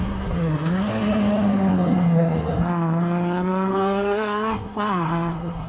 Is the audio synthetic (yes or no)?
yes